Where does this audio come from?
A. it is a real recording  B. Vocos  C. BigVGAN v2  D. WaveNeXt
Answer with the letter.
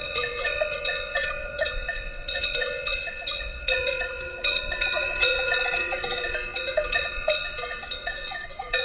D